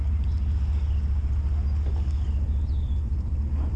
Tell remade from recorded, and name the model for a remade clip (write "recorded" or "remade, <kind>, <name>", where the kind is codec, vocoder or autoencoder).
recorded